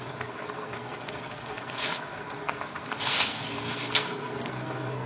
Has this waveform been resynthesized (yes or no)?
yes